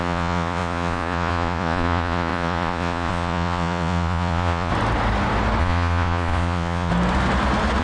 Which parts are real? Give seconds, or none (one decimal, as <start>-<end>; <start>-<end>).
4.7-5.6; 6.9-7.8

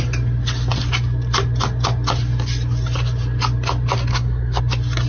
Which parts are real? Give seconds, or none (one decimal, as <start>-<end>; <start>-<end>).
0.0-4.1; 4.6-5.1

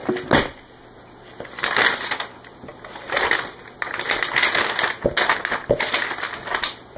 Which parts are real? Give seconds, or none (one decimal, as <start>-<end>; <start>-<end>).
0.0-0.6